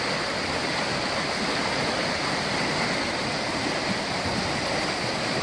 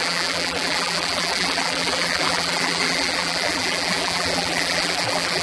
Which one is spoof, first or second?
second